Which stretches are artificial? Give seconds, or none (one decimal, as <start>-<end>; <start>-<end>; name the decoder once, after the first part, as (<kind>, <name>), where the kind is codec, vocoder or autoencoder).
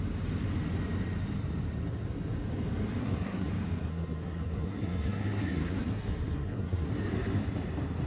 3.0-3.5 (codec, SNAC); 3.9-6.9